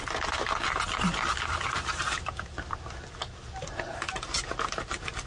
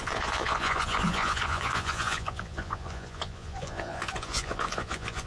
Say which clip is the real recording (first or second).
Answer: first